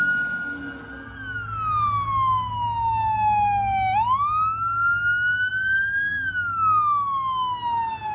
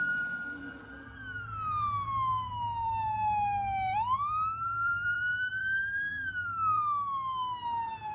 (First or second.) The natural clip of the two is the first